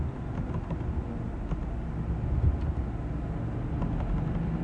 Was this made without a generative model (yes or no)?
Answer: yes